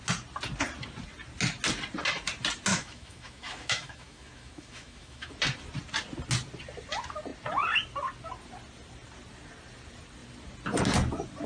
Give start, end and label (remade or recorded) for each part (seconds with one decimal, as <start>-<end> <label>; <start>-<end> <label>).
0.0-2.7 recorded; 2.7-5.3 remade; 5.3-11.5 recorded